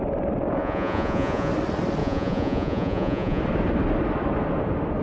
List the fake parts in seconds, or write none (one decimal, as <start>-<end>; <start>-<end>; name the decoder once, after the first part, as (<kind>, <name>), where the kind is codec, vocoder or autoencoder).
0.6-1.5 (vocoder, Vocos); 2.0-3.4